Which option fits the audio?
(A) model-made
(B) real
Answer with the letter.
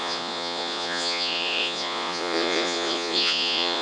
A